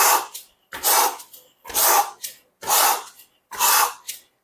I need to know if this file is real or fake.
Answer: real